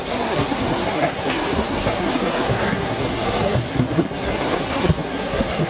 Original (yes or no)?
no